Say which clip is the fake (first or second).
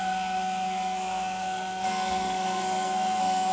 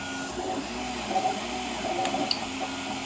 first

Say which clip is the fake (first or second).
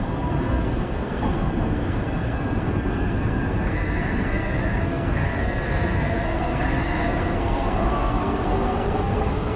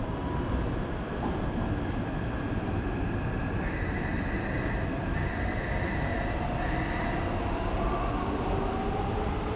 first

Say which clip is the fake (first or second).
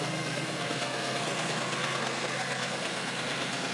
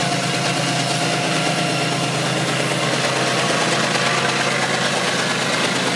first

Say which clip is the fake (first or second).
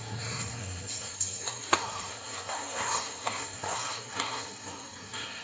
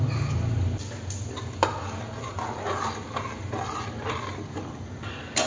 first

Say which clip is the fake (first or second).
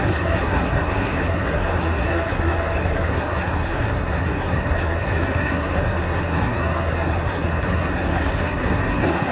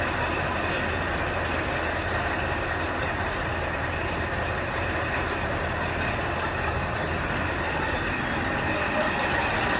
first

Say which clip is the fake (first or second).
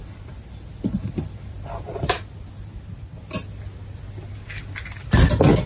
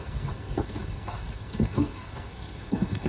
second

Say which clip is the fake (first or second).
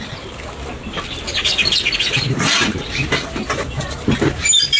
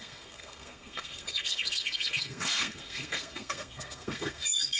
second